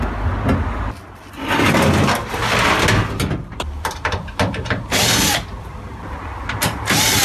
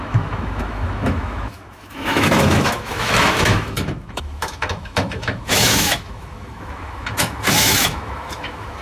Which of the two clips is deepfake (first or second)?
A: second